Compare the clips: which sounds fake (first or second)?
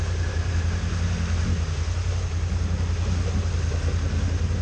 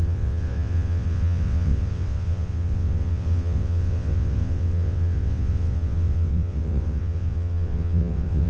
second